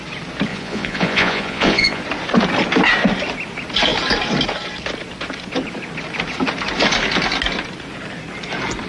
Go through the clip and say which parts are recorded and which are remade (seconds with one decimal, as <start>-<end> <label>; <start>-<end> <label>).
0.0-0.5 recorded; 0.5-2.0 remade; 2.0-8.9 recorded